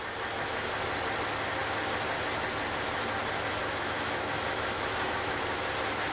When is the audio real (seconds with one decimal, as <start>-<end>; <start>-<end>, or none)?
0.0-3.6; 5.4-6.1